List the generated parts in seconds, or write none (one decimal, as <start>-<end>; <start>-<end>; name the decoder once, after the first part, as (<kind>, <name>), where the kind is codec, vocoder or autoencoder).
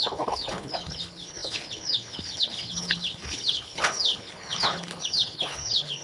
0.0-6.0 (codec, HILCodec)